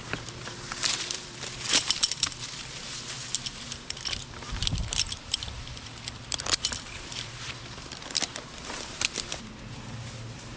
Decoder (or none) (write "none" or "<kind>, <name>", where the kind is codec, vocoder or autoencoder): vocoder, BigVGAN v2